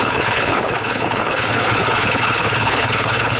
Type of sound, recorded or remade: remade